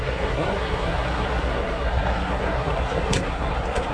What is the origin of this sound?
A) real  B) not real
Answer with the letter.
B